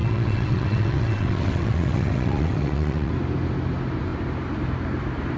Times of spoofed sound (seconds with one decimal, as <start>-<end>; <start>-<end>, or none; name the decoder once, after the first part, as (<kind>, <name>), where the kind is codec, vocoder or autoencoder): 0.0-3.1 (vocoder, WaveNeXt)